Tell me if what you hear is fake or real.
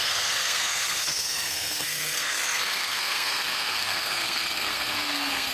fake